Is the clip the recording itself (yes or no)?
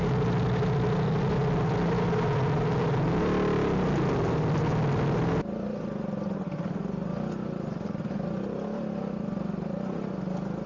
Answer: yes